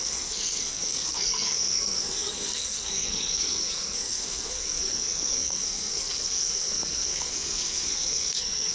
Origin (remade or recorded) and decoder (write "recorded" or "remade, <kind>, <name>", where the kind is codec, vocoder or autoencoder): remade, codec, SNAC